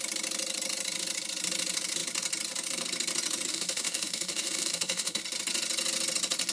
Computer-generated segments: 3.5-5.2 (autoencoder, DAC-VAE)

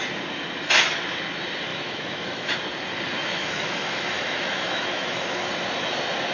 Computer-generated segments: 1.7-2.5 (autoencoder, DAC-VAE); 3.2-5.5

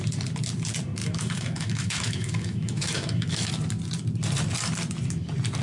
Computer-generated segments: 1.0-3.5 (autoencoder, DAC-VAE)

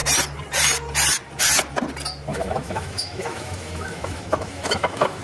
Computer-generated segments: 2.3-5.2 (autoencoder, DAC-VAE)

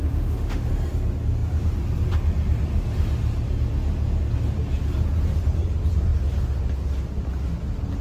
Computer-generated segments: 0.0-0.7 (autoencoder, DAC-VAE)